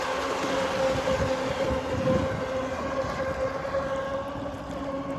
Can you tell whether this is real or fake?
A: real